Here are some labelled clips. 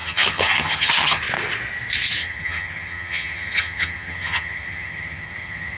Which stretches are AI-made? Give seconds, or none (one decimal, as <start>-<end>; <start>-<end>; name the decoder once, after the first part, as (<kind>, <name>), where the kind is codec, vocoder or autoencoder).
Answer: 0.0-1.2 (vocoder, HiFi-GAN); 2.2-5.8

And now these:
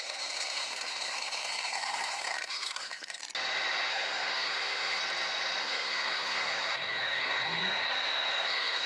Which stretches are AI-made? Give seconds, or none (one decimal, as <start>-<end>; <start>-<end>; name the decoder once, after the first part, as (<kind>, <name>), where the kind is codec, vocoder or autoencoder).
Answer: 0.0-3.2 (codec, SNAC); 3.9-5.0; 5.6-8.9

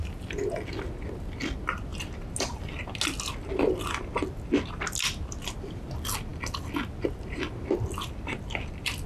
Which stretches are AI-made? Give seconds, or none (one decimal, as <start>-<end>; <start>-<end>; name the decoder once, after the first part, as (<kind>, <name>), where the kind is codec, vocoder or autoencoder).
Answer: none

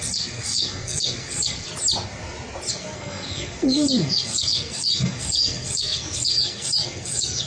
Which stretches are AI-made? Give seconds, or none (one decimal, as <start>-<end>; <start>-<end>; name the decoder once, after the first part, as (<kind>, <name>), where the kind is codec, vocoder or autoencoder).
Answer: 0.0-1.7 (codec, SNAC); 2.7-7.5

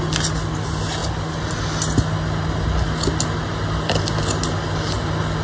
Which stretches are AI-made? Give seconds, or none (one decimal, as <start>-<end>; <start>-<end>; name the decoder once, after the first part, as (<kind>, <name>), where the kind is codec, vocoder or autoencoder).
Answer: none